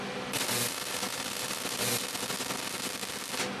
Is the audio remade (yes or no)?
no